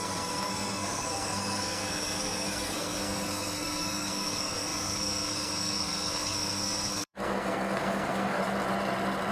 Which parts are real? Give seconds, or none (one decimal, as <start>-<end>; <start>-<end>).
8.4-9.3